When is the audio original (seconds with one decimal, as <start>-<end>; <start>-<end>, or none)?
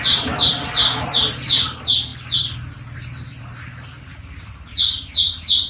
0.0-5.7